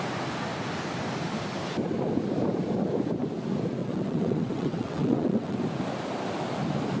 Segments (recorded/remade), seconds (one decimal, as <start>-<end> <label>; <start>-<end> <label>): 0.0-3.8 recorded; 3.8-5.6 remade; 5.6-7.0 recorded